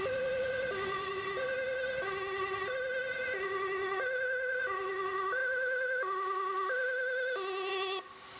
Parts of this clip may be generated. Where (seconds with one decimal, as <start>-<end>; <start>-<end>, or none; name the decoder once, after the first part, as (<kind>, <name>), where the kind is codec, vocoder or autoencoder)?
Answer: none

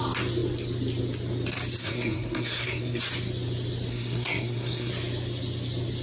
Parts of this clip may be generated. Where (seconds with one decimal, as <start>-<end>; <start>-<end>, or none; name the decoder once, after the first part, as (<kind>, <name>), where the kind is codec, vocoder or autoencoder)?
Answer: 1.8-3.0 (codec, SNAC); 3.9-4.9

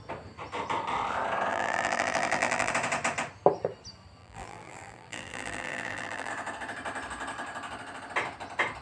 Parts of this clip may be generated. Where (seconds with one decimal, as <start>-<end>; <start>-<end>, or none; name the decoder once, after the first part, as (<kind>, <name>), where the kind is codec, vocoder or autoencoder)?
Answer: 1.5-2.7 (vocoder, BigVGAN v2); 4.2-6.3

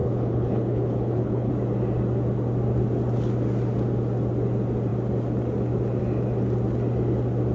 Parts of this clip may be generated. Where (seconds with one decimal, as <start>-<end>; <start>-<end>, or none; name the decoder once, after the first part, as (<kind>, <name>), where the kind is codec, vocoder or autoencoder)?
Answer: 0.0-1.5 (codec, HILCodec)

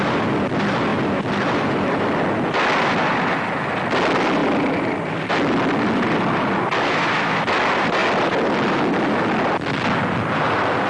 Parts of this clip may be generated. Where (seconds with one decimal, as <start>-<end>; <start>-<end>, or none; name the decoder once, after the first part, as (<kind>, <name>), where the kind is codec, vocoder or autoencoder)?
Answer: none

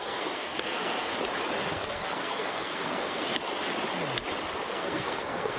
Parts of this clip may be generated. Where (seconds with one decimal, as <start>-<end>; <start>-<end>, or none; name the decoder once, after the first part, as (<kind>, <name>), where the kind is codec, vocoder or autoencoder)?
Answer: 0.0-1.1 (codec, SNAC); 1.7-3.3; 4.7-5.6